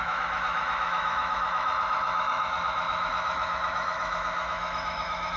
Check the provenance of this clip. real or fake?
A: fake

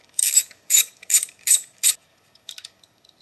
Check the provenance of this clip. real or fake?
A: fake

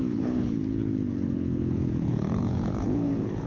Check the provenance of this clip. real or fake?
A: fake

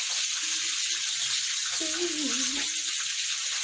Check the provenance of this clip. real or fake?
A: real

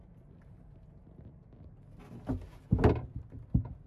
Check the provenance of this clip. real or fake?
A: real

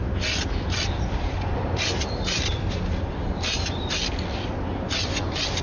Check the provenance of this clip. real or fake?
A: real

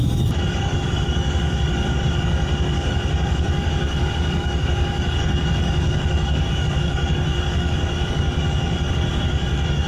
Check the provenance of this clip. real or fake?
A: fake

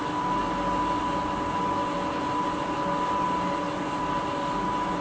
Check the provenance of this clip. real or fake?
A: real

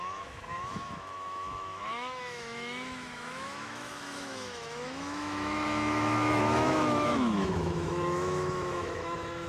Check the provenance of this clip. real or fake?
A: fake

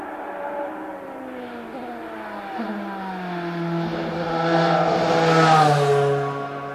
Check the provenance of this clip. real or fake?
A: real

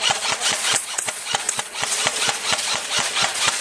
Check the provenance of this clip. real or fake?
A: fake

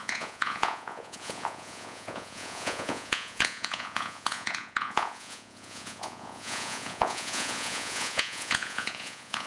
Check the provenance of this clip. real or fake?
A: fake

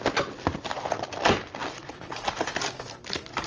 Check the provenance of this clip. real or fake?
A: real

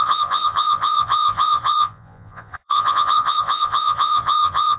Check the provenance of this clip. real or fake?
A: fake